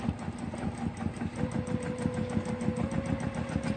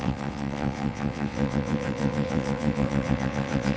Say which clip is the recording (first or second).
first